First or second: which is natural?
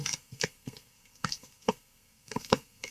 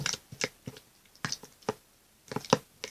second